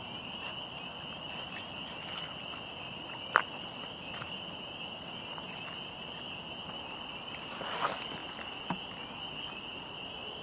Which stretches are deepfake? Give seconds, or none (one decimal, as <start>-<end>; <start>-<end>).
none